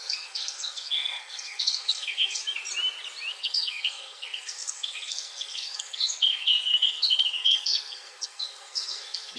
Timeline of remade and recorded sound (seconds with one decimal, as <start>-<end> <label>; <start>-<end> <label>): 0.0-2.4 remade; 2.4-3.3 recorded; 3.3-9.4 remade